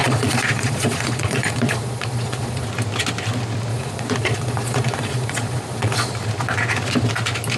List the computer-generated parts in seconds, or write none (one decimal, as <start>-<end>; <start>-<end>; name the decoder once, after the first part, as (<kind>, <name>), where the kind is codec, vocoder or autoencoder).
0.0-2.7 (vocoder, Vocos); 3.7-6.1